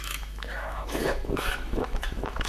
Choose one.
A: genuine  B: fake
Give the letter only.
B